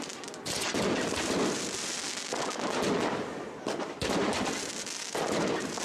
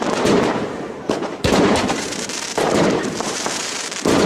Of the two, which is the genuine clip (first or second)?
first